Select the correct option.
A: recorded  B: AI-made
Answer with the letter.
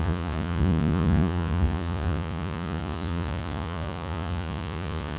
B